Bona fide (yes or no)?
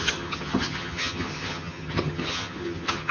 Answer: no